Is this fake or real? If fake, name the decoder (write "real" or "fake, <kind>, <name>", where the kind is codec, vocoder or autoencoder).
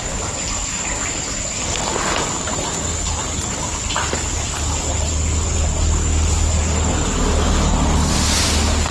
real